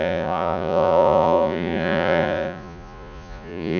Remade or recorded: remade